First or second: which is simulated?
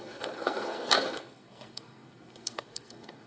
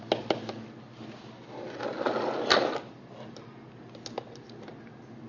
first